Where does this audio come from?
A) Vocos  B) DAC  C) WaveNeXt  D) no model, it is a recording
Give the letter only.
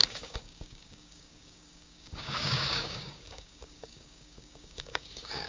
B